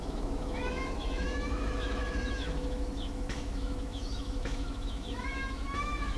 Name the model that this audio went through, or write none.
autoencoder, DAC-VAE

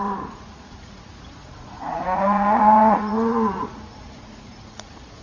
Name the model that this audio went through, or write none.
vocoder, Vocos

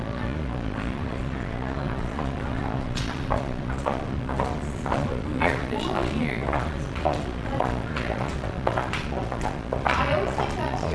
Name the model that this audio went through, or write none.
vocoder, Vocos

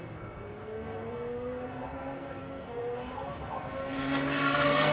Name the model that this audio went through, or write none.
codec, SNAC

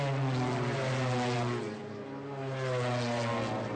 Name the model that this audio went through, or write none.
none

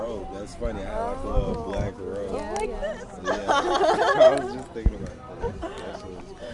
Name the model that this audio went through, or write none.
none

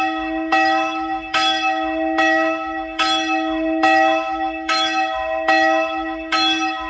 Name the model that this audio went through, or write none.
autoencoder, DAC-VAE